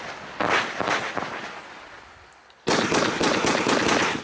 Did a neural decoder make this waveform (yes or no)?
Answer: no